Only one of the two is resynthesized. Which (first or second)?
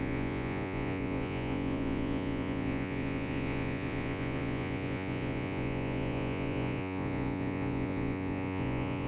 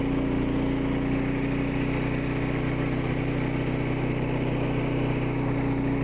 first